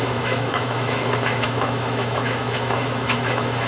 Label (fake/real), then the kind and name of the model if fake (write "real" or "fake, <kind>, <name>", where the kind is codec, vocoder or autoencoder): fake, autoencoder, DAC-VAE